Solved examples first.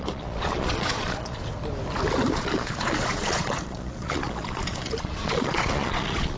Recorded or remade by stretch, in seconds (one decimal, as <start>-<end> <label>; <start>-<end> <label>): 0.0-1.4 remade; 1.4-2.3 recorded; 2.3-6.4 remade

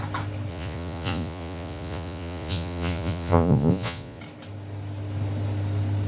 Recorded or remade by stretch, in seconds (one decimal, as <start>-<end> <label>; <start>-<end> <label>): 0.0-0.5 recorded; 0.5-4.2 remade; 4.2-6.1 recorded

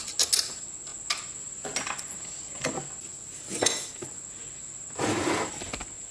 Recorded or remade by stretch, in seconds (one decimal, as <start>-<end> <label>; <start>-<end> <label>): 0.0-6.1 recorded

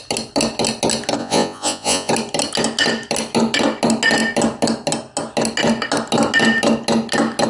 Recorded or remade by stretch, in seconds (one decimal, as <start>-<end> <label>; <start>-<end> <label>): 0.0-1.2 recorded; 1.2-2.1 remade; 2.1-7.5 recorded

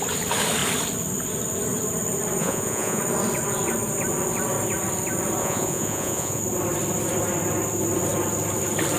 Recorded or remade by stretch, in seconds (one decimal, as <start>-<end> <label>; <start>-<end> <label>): 0.0-2.4 recorded; 2.4-3.0 remade; 3.0-5.4 recorded; 5.4-6.4 remade; 6.4-9.0 recorded

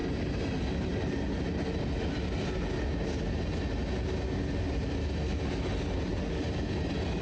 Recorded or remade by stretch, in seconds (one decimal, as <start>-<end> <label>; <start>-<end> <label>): 0.0-7.2 recorded